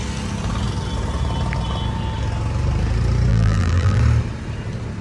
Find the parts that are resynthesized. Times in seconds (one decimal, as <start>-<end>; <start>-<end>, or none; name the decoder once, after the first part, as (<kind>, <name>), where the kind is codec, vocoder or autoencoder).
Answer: 3.3-4.0 (vocoder, BigVGAN v2)